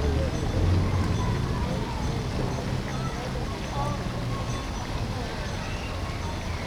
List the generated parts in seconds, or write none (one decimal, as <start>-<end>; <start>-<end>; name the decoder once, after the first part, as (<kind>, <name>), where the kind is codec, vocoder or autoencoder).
none